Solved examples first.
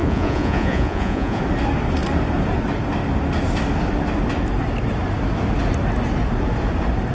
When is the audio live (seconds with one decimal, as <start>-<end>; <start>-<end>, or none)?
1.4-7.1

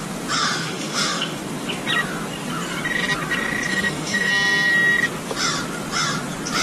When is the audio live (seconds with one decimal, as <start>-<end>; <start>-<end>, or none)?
0.0-0.4; 1.4-3.7; 4.3-6.6

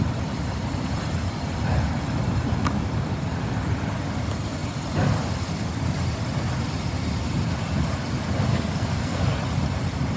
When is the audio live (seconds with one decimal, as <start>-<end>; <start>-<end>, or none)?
0.0-8.5; 9.2-10.2